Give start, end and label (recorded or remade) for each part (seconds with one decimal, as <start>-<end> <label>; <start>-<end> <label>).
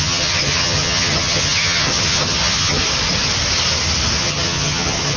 0.0-2.8 remade; 2.8-4.2 recorded; 4.2-5.2 remade